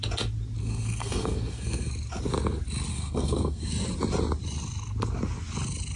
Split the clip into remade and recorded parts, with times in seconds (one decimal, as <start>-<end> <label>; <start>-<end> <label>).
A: 0.0-0.6 recorded; 0.6-1.9 remade; 1.9-2.9 recorded; 2.9-3.7 remade; 3.7-6.0 recorded